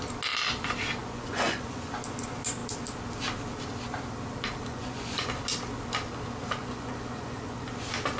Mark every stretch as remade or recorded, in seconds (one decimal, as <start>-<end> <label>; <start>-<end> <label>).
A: 0.0-1.0 recorded; 1.0-1.9 remade; 1.9-4.7 recorded; 4.7-5.3 remade; 5.3-6.6 recorded; 6.6-7.7 remade; 7.7-8.2 recorded